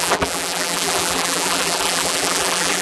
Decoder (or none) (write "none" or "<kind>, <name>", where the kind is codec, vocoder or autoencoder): vocoder, BigVGAN v2